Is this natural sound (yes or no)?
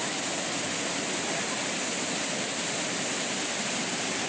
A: yes